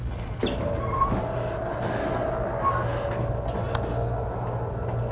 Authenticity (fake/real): real